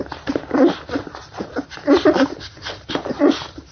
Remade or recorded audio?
remade